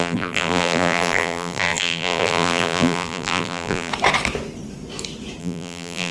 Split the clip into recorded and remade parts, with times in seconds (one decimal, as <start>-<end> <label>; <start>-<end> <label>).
0.0-3.9 remade; 3.9-5.4 recorded; 5.4-6.1 remade